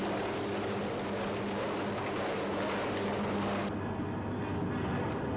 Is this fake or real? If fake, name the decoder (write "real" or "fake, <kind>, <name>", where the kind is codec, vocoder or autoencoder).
real